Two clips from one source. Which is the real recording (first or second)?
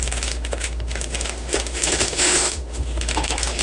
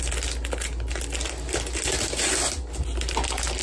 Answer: second